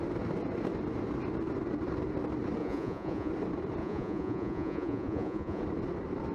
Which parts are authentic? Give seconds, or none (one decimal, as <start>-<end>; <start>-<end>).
0.0-2.6; 3.3-3.8; 5.6-6.3